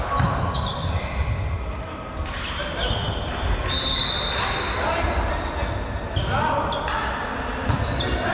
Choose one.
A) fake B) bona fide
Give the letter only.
B